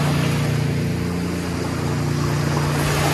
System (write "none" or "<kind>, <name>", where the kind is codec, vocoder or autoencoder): none